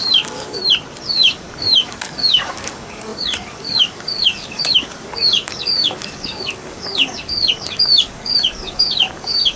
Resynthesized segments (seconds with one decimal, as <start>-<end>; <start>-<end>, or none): 0.0-0.6; 1.1-9.6